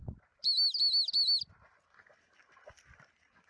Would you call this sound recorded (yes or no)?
yes